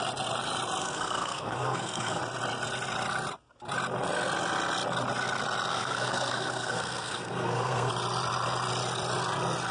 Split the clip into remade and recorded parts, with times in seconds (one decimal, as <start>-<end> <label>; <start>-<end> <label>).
0.0-0.8 recorded; 0.8-2.2 remade; 2.2-5.7 recorded; 5.7-7.9 remade; 7.9-9.7 recorded